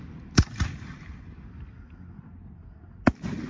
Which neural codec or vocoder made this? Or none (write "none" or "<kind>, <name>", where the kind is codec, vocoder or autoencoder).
none